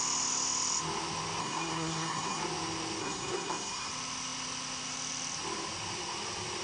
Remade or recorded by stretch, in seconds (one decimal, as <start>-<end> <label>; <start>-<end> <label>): 0.0-1.4 recorded; 1.4-2.4 remade; 2.4-3.0 recorded; 3.0-3.9 remade; 3.9-6.6 recorded